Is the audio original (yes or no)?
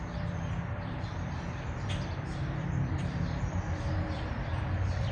no